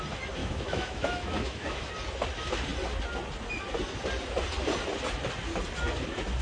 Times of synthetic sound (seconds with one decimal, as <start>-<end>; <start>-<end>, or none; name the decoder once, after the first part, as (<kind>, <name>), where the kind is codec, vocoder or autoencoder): 0.4-1.9 (autoencoder, DAC-VAE)